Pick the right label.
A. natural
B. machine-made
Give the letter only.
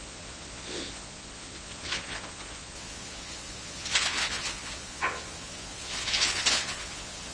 B